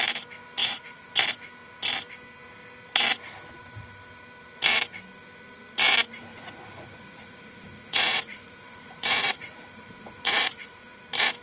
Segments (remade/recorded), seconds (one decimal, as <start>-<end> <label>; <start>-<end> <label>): 0.0-0.6 recorded; 0.6-1.1 remade; 1.1-6.3 recorded; 6.3-11.0 remade; 11.0-11.4 recorded